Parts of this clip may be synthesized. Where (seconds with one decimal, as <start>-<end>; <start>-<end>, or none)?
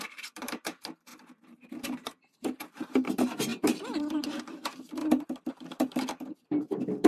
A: 0.0-5.0; 5.5-7.1